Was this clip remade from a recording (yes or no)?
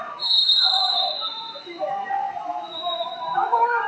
yes